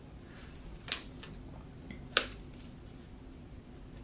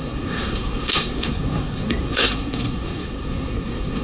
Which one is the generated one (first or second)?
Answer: second